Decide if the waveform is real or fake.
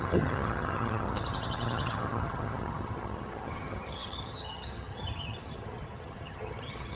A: fake